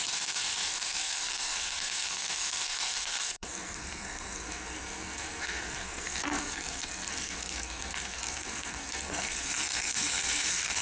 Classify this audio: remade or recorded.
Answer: remade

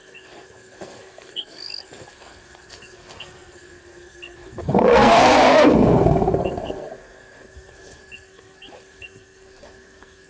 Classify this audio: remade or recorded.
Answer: remade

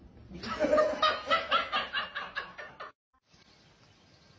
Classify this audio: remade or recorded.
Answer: recorded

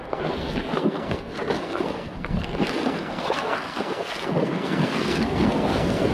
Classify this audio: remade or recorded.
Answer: remade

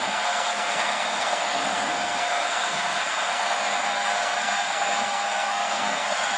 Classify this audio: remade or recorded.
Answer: remade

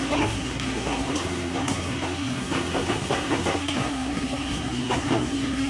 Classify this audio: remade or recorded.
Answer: remade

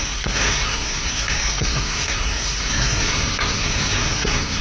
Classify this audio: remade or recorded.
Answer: remade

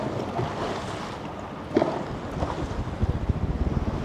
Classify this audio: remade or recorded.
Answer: recorded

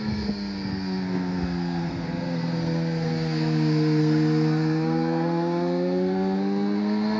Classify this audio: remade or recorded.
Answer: remade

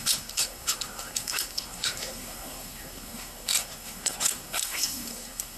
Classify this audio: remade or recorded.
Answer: remade